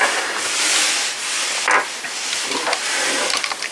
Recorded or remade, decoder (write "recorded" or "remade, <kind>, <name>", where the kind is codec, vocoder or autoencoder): recorded